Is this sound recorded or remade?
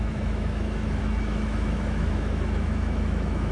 remade